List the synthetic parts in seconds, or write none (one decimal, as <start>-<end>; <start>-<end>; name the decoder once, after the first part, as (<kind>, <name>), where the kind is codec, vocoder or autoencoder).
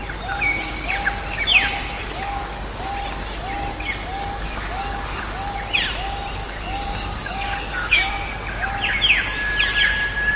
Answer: 2.0-2.9 (codec, DAC); 4.1-5.2; 6.4-8.1